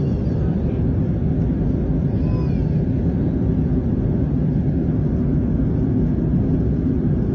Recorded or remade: recorded